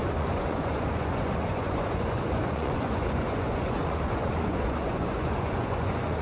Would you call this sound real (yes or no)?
no